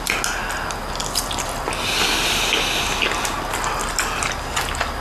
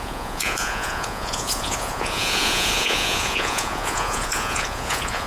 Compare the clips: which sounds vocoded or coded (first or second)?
second